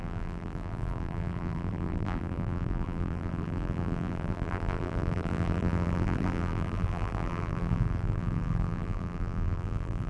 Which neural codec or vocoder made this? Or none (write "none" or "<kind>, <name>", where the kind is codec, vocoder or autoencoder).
vocoder, BigVGAN v2